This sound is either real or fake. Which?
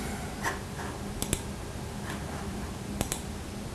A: real